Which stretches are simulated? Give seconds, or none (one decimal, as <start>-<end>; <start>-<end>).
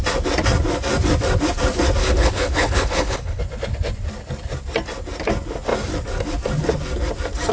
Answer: 2.0-3.4